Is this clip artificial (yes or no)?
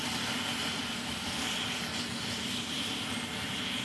yes